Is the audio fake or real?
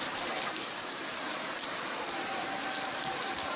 fake